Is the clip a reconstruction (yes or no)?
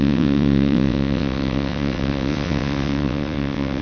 yes